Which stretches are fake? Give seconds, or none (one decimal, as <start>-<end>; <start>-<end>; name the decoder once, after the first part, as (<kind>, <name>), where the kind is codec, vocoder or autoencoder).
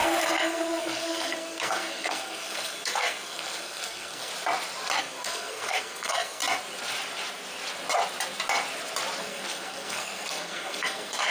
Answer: 0.0-4.3 (codec, SNAC); 5.0-6.4; 9.2-11.3